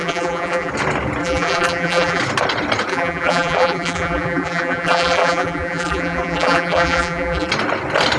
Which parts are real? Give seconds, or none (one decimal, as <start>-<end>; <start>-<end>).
0.7-1.2; 2.2-2.9; 7.5-8.2